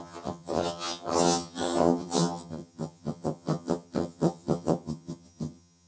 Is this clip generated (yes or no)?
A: yes